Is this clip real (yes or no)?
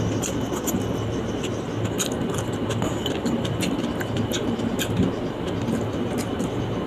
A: yes